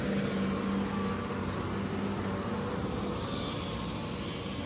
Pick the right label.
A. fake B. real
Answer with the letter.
B